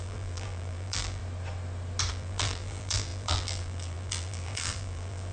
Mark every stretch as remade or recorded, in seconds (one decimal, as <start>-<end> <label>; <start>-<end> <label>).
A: 0.0-1.2 remade; 1.2-2.1 recorded; 2.1-5.3 remade